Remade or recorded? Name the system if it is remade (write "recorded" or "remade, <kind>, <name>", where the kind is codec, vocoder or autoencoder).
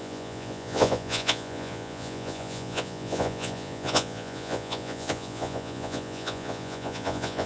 remade, vocoder, Vocos